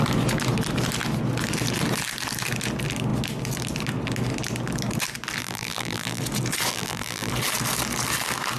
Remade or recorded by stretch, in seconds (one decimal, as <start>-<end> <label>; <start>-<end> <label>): 0.0-5.4 recorded; 5.4-6.2 remade; 6.2-6.7 recorded; 6.7-7.3 remade; 7.3-8.6 recorded